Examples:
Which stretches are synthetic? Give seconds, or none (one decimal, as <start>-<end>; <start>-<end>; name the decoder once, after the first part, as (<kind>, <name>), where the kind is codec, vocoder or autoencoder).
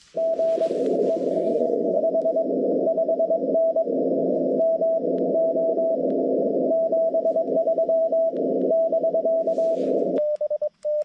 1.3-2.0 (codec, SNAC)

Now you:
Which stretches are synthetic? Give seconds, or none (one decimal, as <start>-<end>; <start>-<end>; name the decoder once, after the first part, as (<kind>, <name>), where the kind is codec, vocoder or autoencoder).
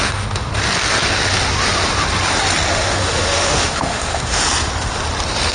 0.0-0.5 (autoencoder, DAC-VAE); 2.7-4.4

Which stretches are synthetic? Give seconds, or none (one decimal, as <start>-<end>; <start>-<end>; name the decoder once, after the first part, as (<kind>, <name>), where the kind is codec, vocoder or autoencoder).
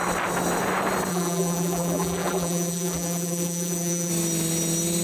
1.1-4.1 (vocoder, BigVGAN v2)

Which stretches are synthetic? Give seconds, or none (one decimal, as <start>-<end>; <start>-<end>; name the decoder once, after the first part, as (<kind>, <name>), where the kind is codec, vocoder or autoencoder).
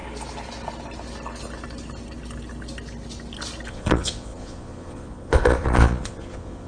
3.7-6.7 (vocoder, Vocos)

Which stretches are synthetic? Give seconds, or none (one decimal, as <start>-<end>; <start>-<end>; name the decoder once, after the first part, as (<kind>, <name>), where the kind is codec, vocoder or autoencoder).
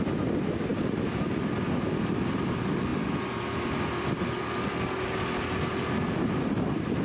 none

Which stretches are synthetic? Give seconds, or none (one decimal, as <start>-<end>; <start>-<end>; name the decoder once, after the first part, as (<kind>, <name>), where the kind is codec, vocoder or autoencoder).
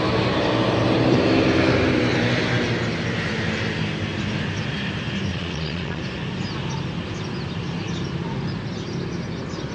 5.3-6.0 (vocoder, Vocos)